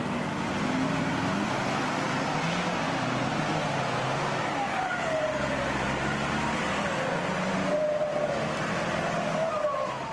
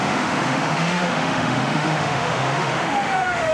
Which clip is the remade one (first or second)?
second